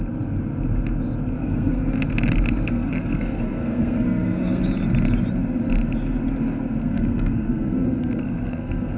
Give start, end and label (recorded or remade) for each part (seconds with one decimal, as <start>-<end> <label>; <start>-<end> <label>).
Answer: 0.0-1.4 recorded; 1.4-1.9 remade; 1.9-2.7 recorded; 2.7-4.6 remade; 4.6-6.8 recorded; 6.8-9.0 remade